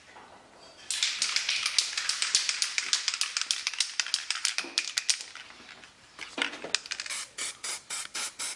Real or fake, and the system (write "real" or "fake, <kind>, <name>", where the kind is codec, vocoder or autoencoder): real